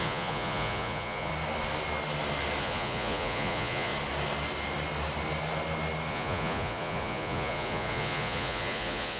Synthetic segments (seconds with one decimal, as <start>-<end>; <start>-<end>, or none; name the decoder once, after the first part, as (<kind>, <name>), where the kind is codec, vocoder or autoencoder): 0.0-1.3 (vocoder, Vocos); 2.6-3.9; 6.1-9.2